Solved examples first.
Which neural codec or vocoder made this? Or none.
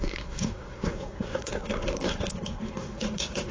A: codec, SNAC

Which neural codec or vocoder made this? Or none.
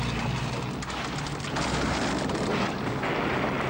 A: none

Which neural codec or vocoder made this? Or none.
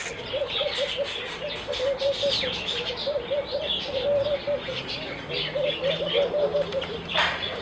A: none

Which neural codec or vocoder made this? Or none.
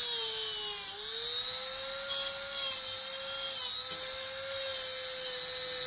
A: none